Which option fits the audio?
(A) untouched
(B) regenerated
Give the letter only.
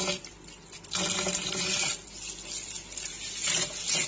A